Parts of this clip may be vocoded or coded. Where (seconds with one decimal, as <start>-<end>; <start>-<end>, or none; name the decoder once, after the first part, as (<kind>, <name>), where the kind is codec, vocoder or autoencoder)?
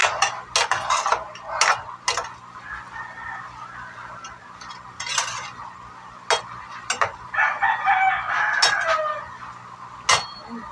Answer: none